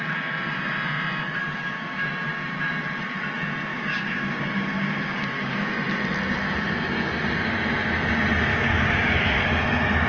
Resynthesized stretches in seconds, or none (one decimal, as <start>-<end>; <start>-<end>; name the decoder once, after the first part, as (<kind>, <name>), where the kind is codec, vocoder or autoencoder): 1.4-2.1 (codec, DAC); 3.7-5.7; 8.5-9.4